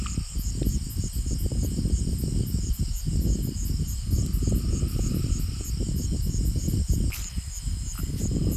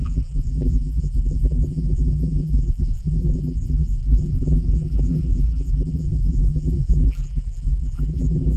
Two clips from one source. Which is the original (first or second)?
first